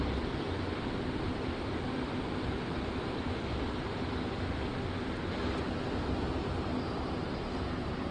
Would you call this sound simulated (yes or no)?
no